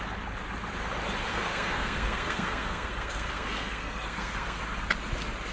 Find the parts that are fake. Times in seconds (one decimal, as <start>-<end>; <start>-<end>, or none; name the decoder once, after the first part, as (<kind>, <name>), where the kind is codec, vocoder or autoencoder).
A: 1.3-4.6 (codec, SNAC)